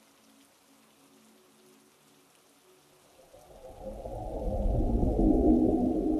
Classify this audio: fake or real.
real